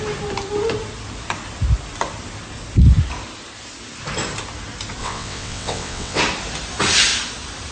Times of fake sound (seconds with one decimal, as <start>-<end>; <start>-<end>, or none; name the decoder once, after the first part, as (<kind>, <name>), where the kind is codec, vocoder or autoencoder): 5.0-6.2 (vocoder, WaveNeXt)